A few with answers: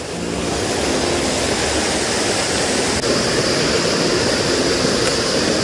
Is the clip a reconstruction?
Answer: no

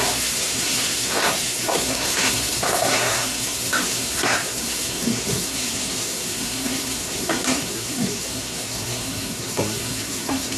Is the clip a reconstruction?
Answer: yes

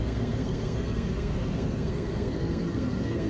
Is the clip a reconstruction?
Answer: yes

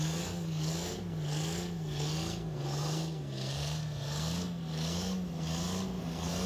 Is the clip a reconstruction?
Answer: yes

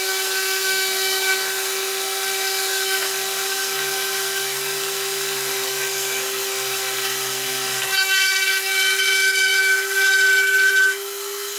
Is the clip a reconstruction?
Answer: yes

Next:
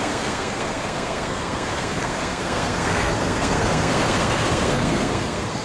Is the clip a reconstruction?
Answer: yes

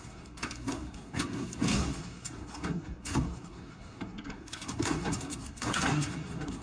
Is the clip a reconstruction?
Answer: yes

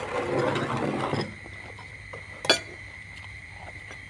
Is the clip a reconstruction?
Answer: no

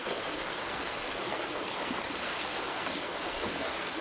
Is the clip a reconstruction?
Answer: yes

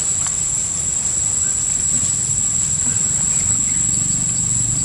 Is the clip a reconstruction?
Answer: no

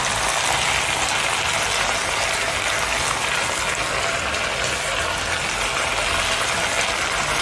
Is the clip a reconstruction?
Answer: no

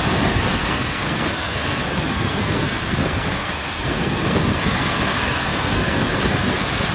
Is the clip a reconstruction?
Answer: yes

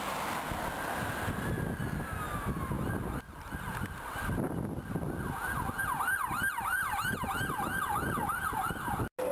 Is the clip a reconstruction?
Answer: no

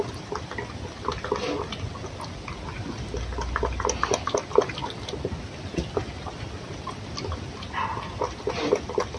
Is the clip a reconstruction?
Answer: no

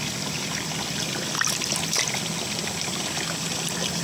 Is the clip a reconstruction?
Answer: no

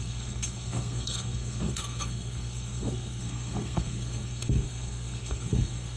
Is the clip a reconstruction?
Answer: yes